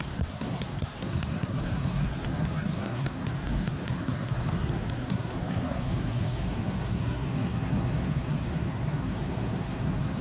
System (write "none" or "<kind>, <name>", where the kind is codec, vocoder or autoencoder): codec, SNAC